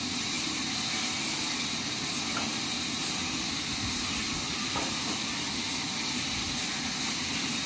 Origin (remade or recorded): recorded